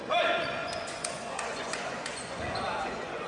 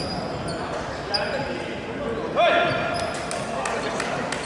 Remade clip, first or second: first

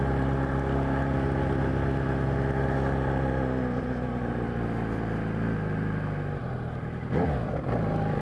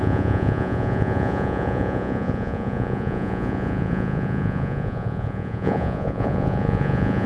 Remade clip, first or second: second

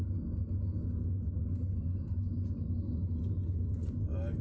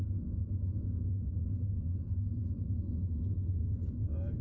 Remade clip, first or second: second